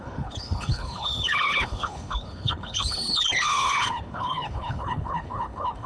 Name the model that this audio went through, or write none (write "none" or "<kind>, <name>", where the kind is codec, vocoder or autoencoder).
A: codec, HILCodec